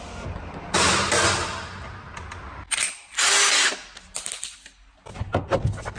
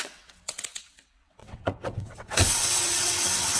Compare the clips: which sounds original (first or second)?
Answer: first